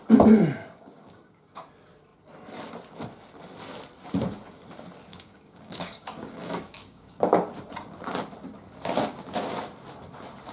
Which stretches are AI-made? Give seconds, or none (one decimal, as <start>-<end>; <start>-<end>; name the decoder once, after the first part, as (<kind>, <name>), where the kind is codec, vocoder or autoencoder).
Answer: 0.6-1.7 (codec, DAC); 5.1-7.1